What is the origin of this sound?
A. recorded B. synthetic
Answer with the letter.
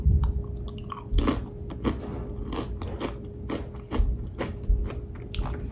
A